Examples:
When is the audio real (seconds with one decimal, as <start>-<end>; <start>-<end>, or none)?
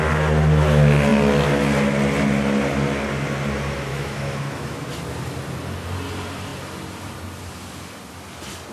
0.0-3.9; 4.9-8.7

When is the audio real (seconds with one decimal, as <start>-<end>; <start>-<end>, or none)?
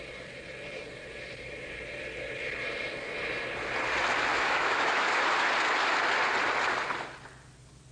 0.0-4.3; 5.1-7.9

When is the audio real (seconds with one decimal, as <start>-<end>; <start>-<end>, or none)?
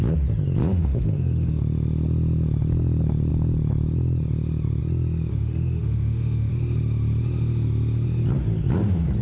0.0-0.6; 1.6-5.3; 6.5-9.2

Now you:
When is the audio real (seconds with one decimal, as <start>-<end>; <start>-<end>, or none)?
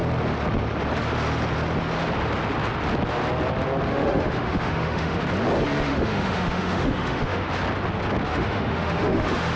0.0-3.9; 5.2-5.9; 7.5-8.3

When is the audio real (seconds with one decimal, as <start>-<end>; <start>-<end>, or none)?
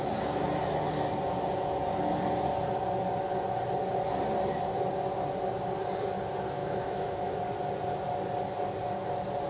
0.0-6.6; 7.3-9.5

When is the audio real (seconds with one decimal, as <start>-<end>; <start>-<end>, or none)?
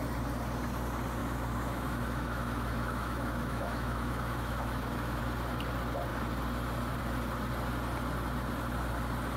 0.0-1.2; 5.2-9.4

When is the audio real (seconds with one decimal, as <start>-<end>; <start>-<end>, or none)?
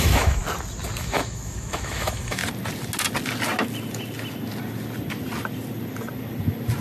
0.4-1.0; 2.4-6.8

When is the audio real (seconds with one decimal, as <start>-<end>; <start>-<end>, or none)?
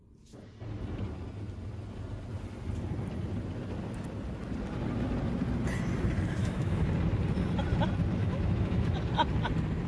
0.0-6.4; 6.9-8.2; 8.9-9.9